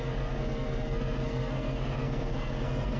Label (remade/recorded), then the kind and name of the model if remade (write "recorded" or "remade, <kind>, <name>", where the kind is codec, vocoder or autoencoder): remade, codec, SNAC